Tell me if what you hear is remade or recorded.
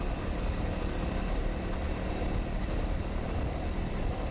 recorded